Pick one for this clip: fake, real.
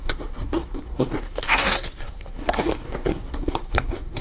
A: fake